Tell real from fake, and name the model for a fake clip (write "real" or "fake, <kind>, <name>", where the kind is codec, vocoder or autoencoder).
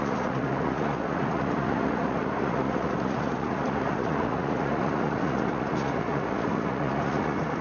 fake, vocoder, Vocos